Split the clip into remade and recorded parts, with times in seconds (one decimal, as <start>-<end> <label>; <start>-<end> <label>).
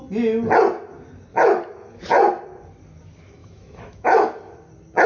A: 0.0-1.3 recorded; 1.3-2.0 remade; 2.0-3.4 recorded; 3.4-4.3 remade; 4.3-5.1 recorded